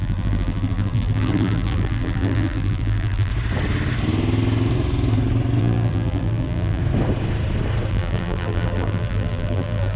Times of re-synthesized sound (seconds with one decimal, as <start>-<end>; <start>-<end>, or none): 0.0-3.3; 5.6-6.8; 7.9-10.0

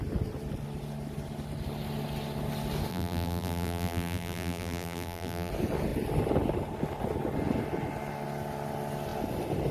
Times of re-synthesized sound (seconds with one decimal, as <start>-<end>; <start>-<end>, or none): 2.9-5.5